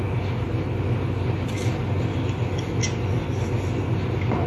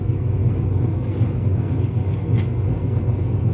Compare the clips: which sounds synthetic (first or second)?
second